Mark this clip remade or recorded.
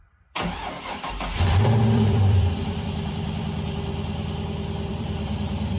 remade